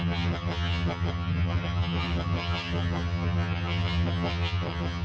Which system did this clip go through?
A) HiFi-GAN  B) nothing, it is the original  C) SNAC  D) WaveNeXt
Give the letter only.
A